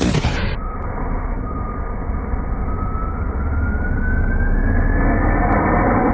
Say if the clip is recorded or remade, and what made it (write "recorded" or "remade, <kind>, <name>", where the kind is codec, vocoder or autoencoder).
recorded